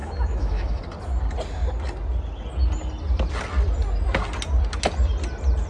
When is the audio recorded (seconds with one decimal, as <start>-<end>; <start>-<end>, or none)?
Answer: 0.8-5.7